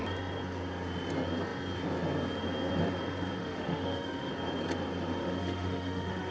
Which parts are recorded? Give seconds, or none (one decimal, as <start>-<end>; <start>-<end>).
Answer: 0.0-3.4; 4.3-5.2